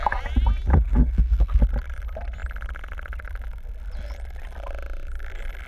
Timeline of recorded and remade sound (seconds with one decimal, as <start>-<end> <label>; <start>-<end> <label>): 0.0-0.7 recorded; 0.7-1.6 remade; 1.6-5.7 recorded